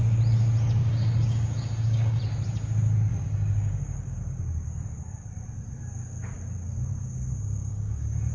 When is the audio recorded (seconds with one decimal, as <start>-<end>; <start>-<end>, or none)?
0.0-0.8; 2.2-3.1; 4.4-7.6